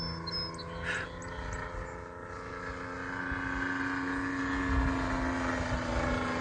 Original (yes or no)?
yes